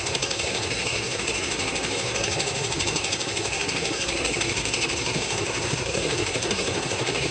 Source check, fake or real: fake